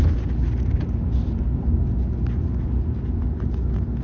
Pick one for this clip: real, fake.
real